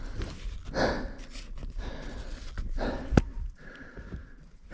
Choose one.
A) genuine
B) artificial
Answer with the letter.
A